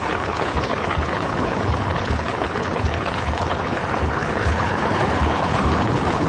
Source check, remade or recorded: remade